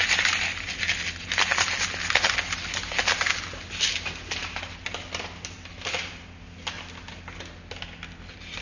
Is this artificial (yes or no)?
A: no